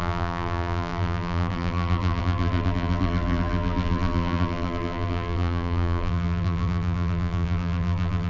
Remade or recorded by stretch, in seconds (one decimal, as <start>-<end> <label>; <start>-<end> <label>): 0.0-8.3 remade